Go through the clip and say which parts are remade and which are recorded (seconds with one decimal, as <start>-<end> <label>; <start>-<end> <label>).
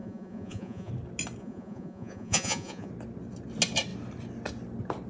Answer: 0.0-0.9 remade; 0.9-1.4 recorded; 1.4-2.9 remade; 2.9-5.1 recorded